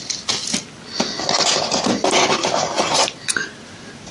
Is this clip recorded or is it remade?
recorded